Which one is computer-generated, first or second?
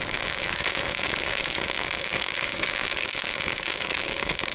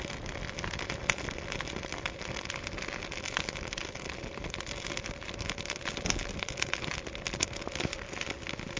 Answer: first